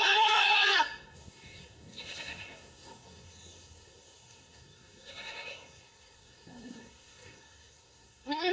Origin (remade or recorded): remade